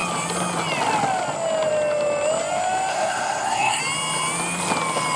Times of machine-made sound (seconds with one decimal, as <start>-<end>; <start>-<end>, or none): 2.9-3.8